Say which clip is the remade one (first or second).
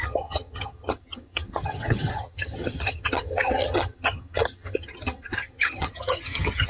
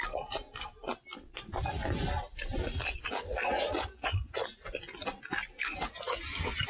first